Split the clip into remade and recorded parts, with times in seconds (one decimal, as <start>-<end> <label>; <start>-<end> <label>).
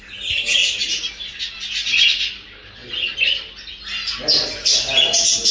0.0-5.5 recorded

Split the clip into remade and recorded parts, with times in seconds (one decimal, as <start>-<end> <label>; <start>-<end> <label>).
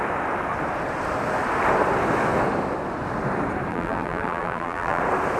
0.0-3.7 recorded; 3.7-5.0 remade; 5.0-5.4 recorded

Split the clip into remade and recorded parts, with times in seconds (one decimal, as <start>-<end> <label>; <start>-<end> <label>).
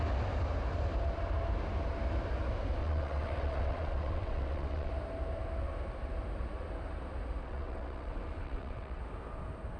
0.0-2.8 recorded; 2.8-4.9 remade; 4.9-7.4 recorded; 7.4-9.0 remade; 9.0-9.8 recorded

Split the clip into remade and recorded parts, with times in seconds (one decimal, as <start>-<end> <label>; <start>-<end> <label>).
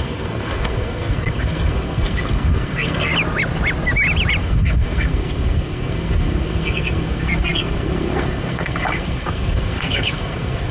0.0-3.1 remade; 3.1-4.4 recorded; 4.4-10.7 remade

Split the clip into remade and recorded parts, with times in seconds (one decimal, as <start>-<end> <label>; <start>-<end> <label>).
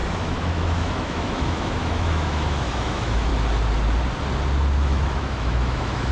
0.0-3.3 remade; 3.3-4.8 recorded; 4.8-6.1 remade